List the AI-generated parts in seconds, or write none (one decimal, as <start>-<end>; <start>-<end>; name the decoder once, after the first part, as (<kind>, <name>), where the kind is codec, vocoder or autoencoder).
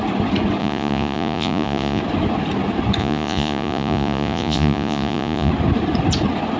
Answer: 0.6-2.0 (vocoder, Vocos); 3.0-5.5